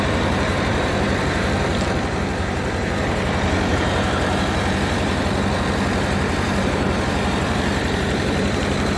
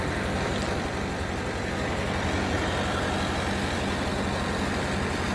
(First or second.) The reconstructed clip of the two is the first